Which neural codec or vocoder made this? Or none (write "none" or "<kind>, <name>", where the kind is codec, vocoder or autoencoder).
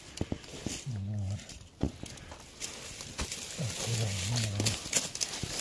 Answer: none